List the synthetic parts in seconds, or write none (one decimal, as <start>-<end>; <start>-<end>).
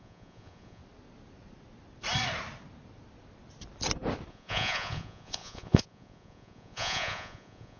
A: 0.0-0.8; 4.3-7.8